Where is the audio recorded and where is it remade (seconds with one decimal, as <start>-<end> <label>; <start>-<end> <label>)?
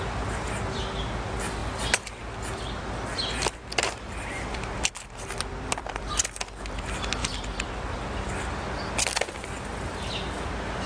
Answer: 0.0-10.9 recorded